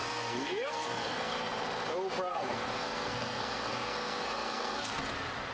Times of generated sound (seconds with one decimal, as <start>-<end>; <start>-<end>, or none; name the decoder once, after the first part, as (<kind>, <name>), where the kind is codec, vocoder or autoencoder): 0.0-1.5 (codec, SNAC); 2.3-5.0